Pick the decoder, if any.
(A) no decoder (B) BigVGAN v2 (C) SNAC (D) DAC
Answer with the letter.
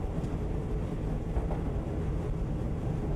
A